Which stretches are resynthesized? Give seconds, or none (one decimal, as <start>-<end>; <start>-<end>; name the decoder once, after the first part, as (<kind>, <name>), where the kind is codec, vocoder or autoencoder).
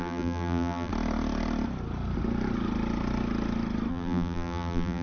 0.0-0.9 (vocoder, BigVGAN v2); 3.9-5.0